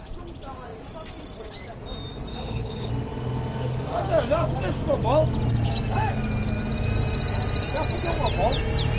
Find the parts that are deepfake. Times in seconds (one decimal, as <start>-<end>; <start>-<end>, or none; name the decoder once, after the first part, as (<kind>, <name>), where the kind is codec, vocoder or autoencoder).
2.3-2.9 (codec, HILCodec)